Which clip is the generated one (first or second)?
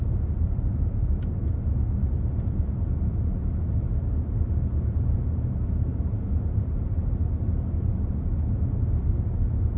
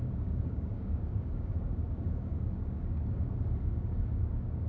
second